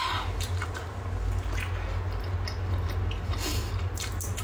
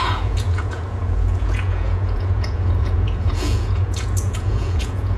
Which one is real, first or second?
first